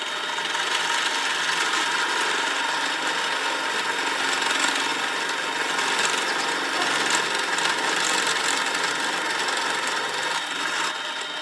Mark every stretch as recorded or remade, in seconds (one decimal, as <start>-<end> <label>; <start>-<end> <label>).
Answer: 0.0-11.4 recorded